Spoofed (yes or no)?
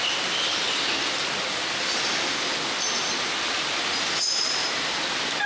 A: no